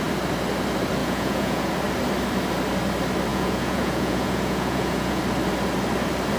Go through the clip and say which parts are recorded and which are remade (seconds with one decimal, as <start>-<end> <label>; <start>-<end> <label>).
0.0-1.0 recorded; 1.0-1.7 remade; 1.7-3.3 recorded; 3.3-5.2 remade; 5.2-6.4 recorded